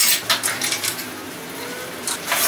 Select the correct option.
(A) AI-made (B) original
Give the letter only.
B